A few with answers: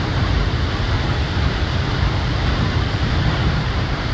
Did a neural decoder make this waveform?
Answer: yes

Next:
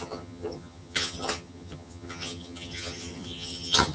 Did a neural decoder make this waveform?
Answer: yes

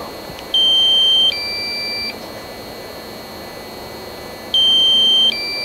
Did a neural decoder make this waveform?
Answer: no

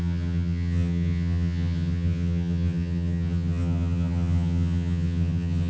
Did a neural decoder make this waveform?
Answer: yes